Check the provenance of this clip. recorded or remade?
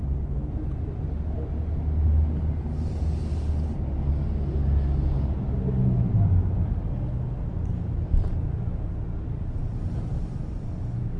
recorded